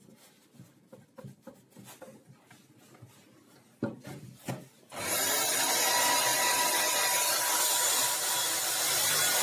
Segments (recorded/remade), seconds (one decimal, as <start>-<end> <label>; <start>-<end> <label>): 0.0-9.4 recorded